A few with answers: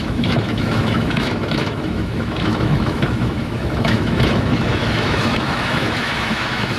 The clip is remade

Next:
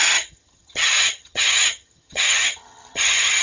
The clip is remade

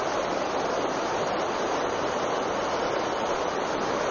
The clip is recorded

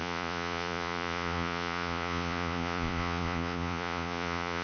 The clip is remade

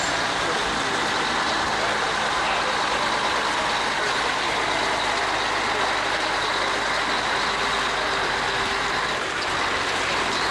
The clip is recorded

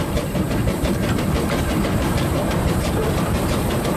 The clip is remade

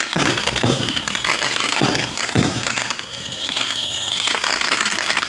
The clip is remade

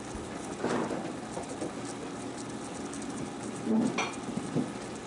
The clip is recorded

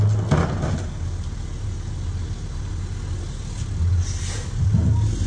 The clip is recorded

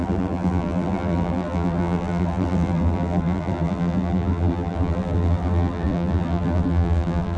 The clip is remade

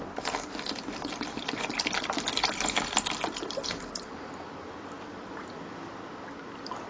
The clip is recorded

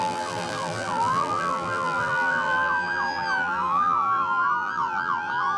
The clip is remade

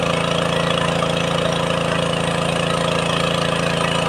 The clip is recorded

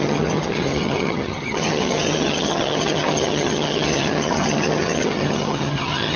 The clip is remade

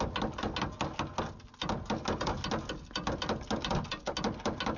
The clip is recorded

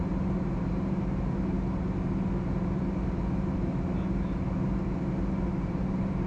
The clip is recorded